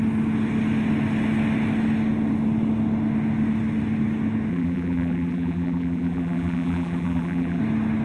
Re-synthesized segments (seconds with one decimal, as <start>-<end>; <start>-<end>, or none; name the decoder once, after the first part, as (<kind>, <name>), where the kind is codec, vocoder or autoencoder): 4.5-7.6 (vocoder, BigVGAN v2)